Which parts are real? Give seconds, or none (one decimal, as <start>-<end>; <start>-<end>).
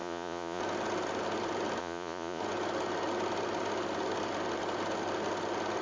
0.6-1.8; 2.4-5.8